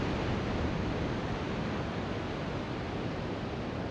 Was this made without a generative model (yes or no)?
yes